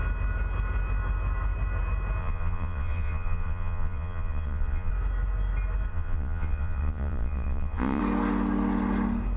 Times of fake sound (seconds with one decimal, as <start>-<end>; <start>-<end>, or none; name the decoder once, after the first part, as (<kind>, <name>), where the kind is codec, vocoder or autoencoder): 2.2-4.9 (vocoder, Vocos); 5.9-8.0